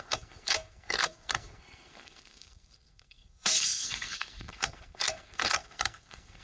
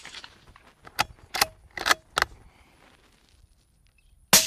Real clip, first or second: second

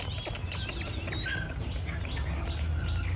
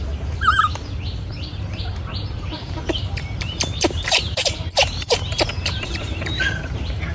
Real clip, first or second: first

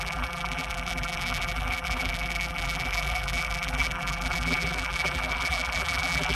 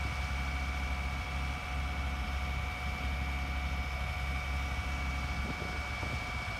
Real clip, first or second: second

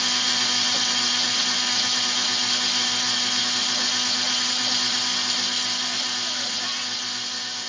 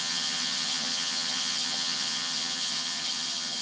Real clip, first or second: first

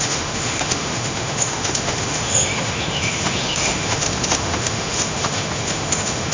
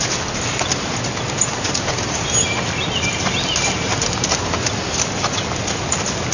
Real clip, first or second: second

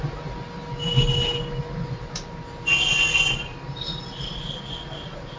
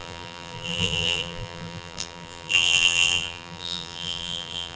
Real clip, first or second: first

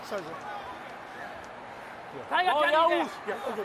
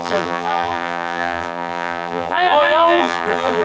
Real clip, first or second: first